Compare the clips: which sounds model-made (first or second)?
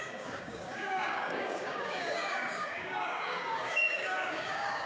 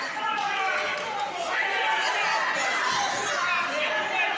first